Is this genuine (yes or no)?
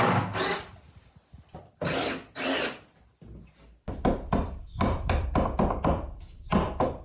yes